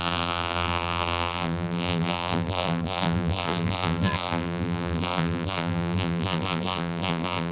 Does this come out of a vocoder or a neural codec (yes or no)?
yes